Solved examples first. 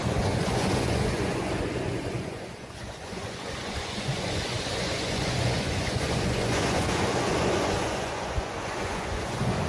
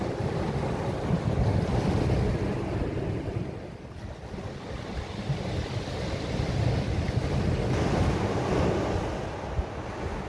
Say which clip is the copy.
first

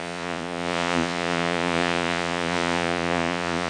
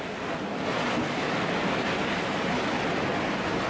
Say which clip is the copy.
first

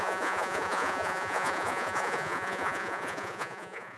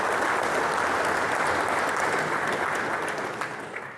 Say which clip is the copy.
first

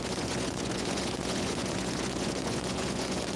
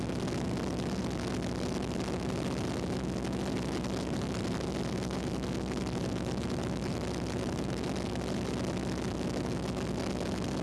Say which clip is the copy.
first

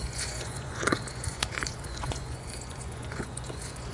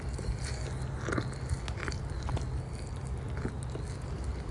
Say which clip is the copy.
first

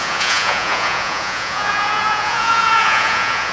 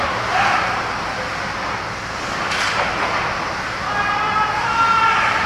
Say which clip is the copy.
first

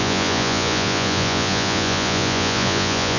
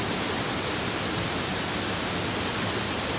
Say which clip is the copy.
first